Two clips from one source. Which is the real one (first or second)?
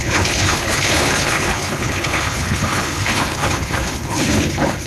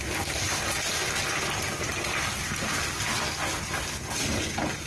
second